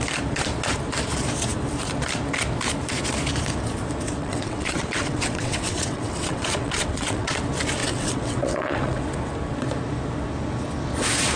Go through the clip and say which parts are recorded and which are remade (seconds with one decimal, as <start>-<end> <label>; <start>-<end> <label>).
0.0-4.2 recorded; 4.2-7.3 remade; 7.3-7.8 recorded; 7.8-9.0 remade; 9.0-11.4 recorded